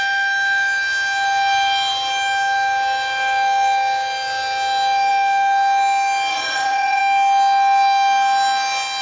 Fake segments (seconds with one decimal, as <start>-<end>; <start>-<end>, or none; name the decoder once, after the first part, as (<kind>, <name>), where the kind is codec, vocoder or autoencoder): 6.3-7.0 (vocoder, Vocos)